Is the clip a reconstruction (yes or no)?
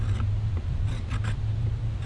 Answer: no